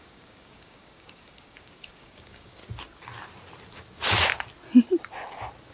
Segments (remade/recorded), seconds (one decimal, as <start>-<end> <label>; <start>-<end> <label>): 0.0-2.6 remade; 2.6-5.7 recorded